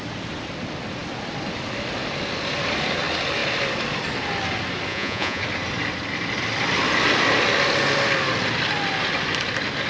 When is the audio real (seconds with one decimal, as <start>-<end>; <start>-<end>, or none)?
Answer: 0.0-4.9; 5.4-9.9